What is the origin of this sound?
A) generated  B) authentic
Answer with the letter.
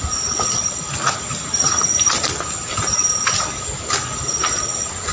B